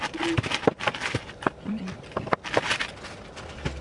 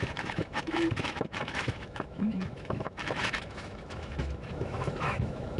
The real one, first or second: first